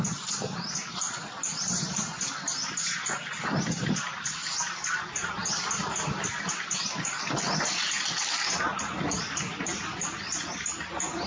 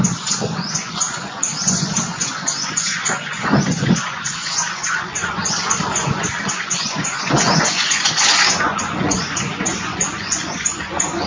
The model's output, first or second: second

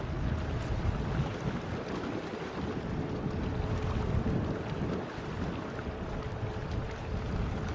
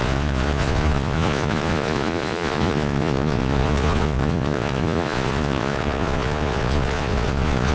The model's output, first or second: second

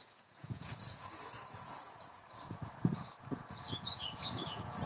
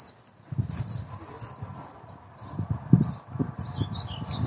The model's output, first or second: first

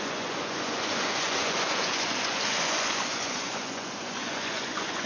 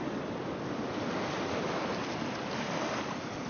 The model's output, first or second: first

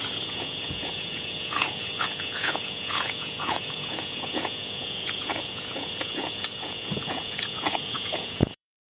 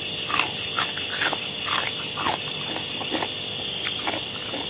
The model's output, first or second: first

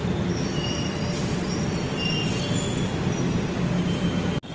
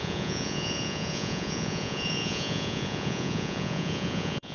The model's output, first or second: second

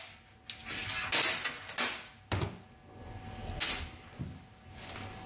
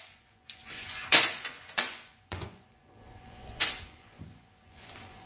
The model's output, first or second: second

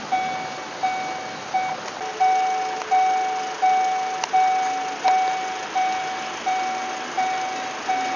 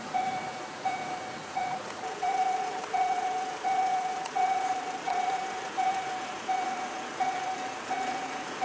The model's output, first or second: second